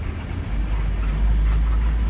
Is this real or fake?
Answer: real